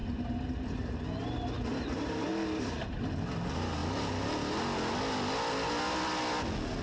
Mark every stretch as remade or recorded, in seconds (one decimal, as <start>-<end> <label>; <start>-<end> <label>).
0.0-1.0 remade; 1.0-1.7 recorded; 1.7-2.3 remade; 2.3-6.8 recorded